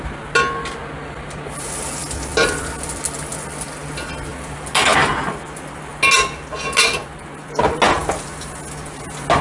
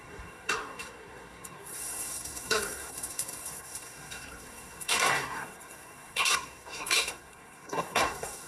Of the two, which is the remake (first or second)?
second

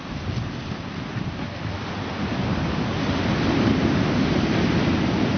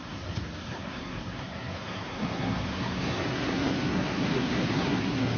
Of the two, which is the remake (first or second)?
second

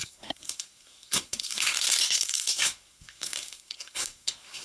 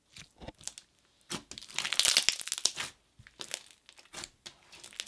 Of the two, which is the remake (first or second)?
first